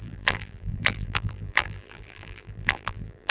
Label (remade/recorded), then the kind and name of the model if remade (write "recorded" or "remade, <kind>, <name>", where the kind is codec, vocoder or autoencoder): remade, vocoder, BigVGAN v2